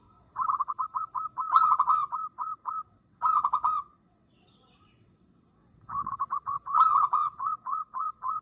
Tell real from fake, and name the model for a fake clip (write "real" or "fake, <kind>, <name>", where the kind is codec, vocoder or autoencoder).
fake, vocoder, WaveNeXt